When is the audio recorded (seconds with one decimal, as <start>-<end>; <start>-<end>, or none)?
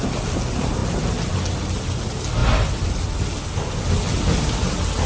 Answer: 0.0-5.1